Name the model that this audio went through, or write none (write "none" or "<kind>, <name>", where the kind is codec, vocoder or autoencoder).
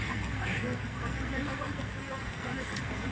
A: codec, SNAC